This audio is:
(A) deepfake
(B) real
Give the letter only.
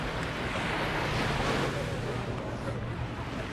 B